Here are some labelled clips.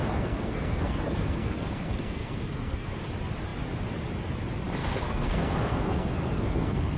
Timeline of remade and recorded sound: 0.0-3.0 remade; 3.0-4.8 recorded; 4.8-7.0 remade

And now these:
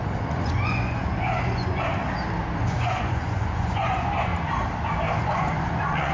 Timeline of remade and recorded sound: 0.0-2.0 remade; 2.0-2.6 recorded; 2.6-4.3 remade; 4.3-5.2 recorded; 5.2-6.1 remade

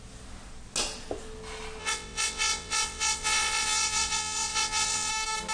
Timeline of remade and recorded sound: 0.0-1.8 recorded; 1.8-5.1 remade; 5.1-5.5 recorded